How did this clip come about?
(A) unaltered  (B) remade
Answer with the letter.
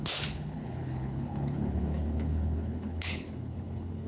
B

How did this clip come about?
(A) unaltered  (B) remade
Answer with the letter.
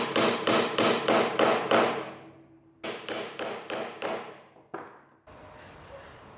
A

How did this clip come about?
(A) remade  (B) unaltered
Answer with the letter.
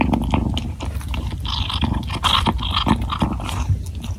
B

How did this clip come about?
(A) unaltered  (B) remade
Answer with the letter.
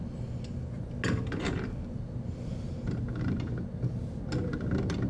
A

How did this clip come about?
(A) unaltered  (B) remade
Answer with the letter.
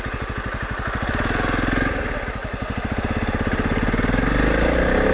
A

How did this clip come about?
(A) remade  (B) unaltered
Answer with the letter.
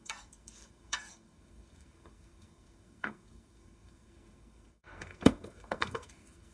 A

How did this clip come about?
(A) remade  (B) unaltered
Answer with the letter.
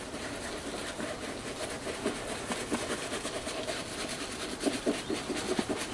B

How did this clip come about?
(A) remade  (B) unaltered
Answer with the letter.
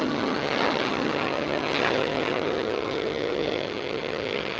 A